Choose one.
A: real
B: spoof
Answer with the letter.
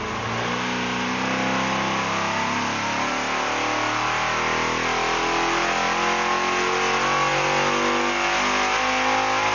A